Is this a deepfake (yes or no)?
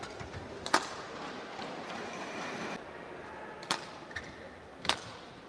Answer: no